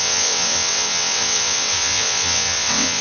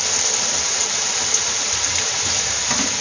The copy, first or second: first